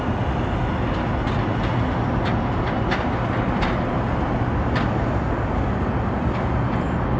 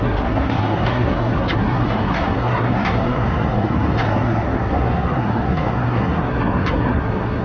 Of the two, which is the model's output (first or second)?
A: second